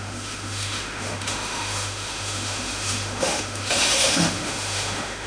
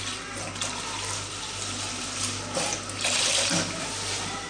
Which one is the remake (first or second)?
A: first